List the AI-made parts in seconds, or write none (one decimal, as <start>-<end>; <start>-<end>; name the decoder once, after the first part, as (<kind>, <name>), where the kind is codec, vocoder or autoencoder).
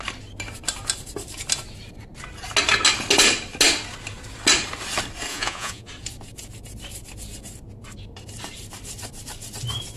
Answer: 5.3-5.9 (vocoder, Vocos)